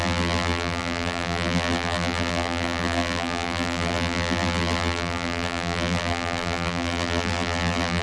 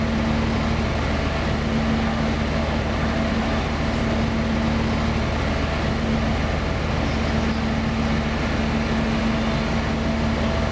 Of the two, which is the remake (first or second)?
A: first